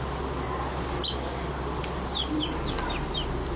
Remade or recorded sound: recorded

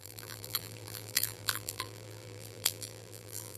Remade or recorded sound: remade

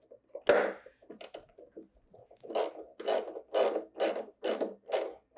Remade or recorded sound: recorded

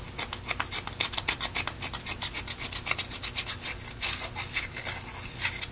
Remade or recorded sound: recorded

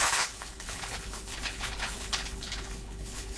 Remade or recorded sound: remade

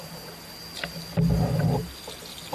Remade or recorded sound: recorded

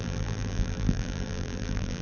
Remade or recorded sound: remade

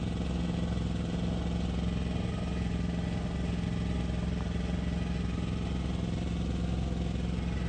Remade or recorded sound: recorded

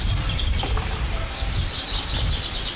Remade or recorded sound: recorded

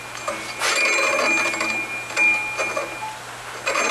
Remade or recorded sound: recorded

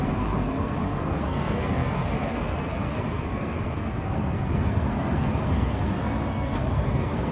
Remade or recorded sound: remade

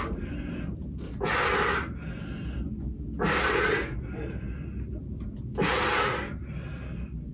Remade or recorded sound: recorded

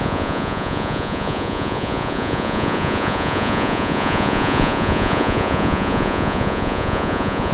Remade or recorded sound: remade